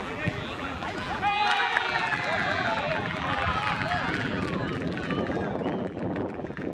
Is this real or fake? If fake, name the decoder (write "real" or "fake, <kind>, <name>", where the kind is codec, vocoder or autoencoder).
fake, vocoder, BigVGAN v2